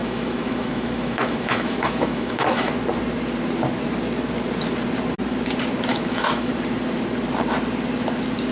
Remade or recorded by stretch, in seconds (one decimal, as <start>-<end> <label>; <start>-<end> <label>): 0.0-2.7 remade; 2.7-5.9 recorded; 5.9-6.5 remade; 6.5-8.5 recorded